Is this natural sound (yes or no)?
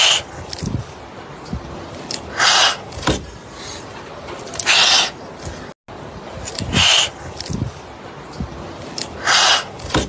yes